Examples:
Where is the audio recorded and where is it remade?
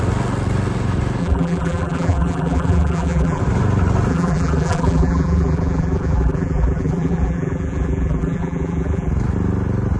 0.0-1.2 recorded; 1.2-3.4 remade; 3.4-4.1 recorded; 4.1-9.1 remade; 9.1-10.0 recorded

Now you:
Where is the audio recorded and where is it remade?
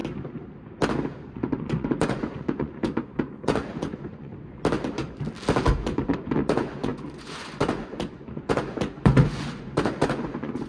0.0-1.3 recorded; 1.3-4.3 remade; 4.3-5.8 recorded; 5.8-10.7 remade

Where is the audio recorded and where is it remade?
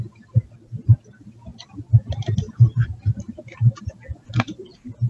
0.0-5.1 recorded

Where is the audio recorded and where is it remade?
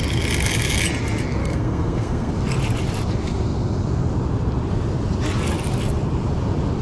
0.0-1.4 recorded; 1.4-2.3 remade; 2.3-6.8 recorded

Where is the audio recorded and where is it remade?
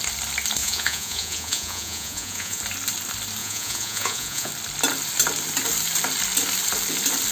0.0-0.6 recorded; 0.6-2.6 remade; 2.6-3.4 recorded; 3.4-4.5 remade; 4.5-7.3 recorded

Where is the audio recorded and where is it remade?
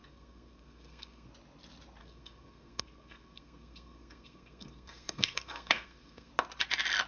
0.0-1.3 remade; 1.3-2.0 recorded; 2.0-6.3 remade; 6.3-7.1 recorded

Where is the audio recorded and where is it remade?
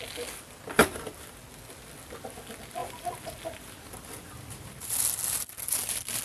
0.0-0.8 recorded; 0.8-1.3 remade; 1.3-2.8 recorded; 2.8-5.0 remade; 5.0-6.2 recorded